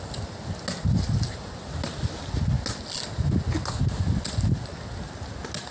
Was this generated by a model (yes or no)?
no